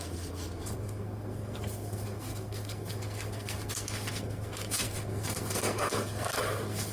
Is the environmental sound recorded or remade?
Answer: remade